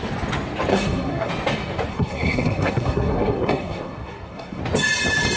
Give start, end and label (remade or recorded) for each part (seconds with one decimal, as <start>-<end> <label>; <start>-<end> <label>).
0.0-0.7 recorded; 0.7-1.3 remade; 1.3-1.9 recorded; 1.9-4.6 remade; 4.6-5.4 recorded